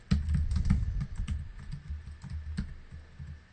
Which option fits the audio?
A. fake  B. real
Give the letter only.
B